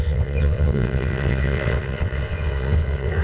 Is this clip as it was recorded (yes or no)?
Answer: no